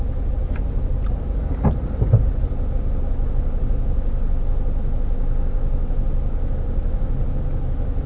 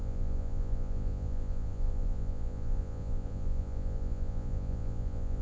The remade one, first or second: second